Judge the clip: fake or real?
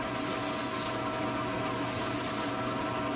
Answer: real